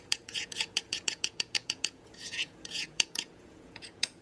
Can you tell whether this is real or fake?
fake